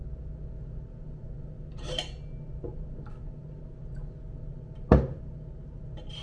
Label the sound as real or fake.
real